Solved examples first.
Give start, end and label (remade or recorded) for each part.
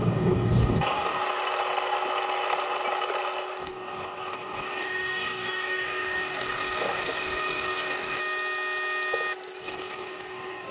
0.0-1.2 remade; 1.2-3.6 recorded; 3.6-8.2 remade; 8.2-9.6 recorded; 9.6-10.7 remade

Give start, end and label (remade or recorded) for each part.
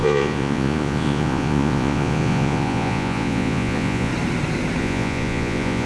0.0-4.1 remade; 4.1-4.8 recorded; 4.8-5.9 remade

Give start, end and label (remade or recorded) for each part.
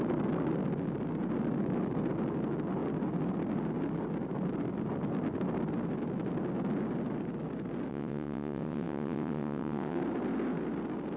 0.0-7.9 recorded; 7.9-10.0 remade; 10.0-11.2 recorded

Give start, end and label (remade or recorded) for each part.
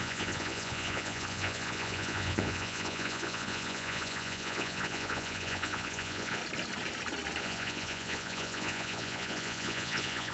0.0-6.4 remade; 6.4-7.4 recorded; 7.4-10.3 remade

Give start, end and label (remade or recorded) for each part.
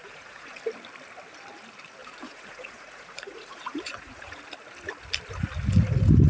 0.0-0.6 remade; 0.6-2.0 recorded; 2.0-4.4 remade; 4.4-6.3 recorded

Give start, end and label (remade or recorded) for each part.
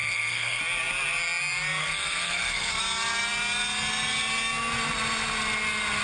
0.0-0.6 remade; 0.6-1.8 recorded; 1.8-2.8 remade; 2.8-6.0 recorded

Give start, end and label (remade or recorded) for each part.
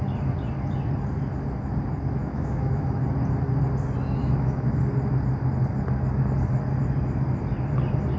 0.0-2.2 recorded; 2.2-3.0 remade; 3.0-4.2 recorded; 4.2-4.8 remade; 4.8-8.2 recorded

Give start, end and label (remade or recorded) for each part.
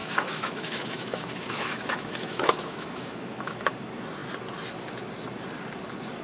0.0-3.7 remade; 3.7-6.2 recorded